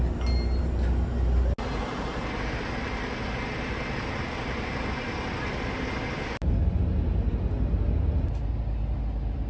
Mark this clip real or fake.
real